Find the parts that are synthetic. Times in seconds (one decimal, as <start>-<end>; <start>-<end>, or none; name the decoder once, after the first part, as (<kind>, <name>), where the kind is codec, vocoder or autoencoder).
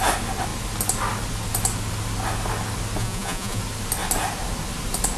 3.0-3.6 (vocoder, Vocos)